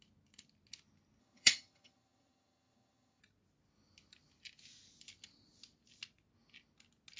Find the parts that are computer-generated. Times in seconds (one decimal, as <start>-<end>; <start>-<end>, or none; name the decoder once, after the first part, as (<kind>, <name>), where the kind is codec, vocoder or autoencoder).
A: 1.2-3.2 (vocoder, HiFi-GAN)